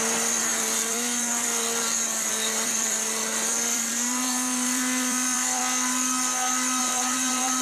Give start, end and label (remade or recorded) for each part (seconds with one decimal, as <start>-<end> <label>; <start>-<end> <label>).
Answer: 0.0-5.6 remade; 5.6-6.8 recorded; 6.8-7.6 remade

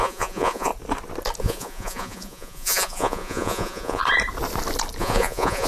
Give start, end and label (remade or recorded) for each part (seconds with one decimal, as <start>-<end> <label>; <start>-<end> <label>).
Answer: 0.0-0.7 remade; 0.7-1.4 recorded; 1.4-4.0 remade; 4.0-5.0 recorded; 5.0-5.7 remade

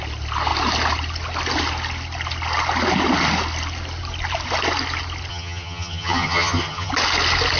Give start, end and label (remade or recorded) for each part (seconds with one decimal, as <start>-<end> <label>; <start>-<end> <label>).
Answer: 0.0-5.3 recorded; 5.3-6.9 remade; 6.9-7.6 recorded

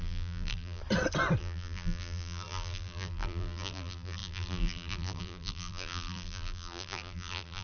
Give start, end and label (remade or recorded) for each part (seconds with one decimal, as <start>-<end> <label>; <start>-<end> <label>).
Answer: 0.0-0.8 remade; 0.8-1.4 recorded; 1.4-7.6 remade

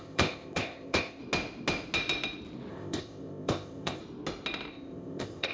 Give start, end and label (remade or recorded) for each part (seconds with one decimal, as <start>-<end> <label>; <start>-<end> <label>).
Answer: 0.0-1.2 remade; 1.2-2.7 recorded; 2.7-4.0 remade; 4.0-4.7 recorded; 4.7-5.5 remade

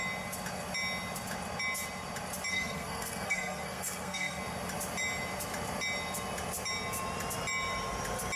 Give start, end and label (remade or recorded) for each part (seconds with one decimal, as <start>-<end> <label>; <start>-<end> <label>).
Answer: 0.0-2.5 recorded; 2.5-4.4 remade; 4.4-8.4 recorded